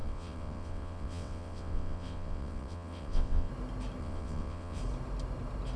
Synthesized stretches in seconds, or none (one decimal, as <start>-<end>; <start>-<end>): 0.0-3.5; 4.0-4.8